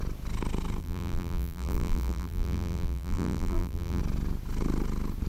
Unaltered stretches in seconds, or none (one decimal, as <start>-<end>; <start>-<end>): 0.0-0.8; 4.0-5.3